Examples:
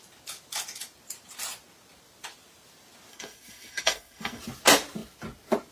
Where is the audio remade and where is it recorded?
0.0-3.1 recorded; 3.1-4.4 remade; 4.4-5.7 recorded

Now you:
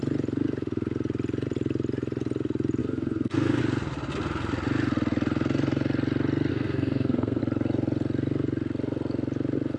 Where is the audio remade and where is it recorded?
0.0-2.8 recorded; 2.8-3.6 remade; 3.6-6.5 recorded; 6.5-7.4 remade; 7.4-9.8 recorded